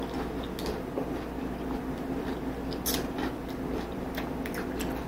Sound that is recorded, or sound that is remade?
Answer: recorded